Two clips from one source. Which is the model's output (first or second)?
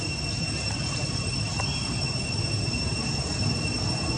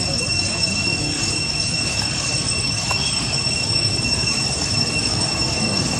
second